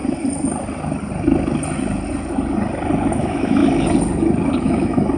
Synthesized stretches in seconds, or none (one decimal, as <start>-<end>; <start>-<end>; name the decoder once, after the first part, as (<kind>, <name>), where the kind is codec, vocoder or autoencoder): 3.1-3.6 (autoencoder, DAC-VAE); 4.6-5.2